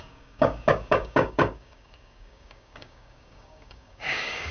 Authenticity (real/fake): fake